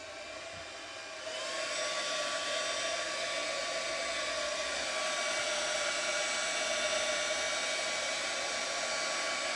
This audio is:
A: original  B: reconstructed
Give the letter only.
A